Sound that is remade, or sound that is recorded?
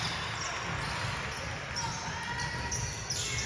recorded